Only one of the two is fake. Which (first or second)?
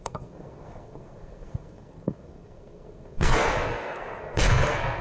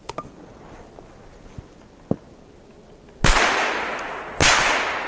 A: first